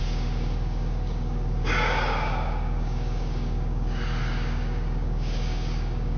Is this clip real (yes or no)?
no